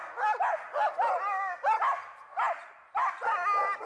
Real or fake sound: real